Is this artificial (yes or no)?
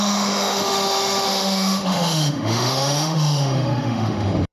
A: yes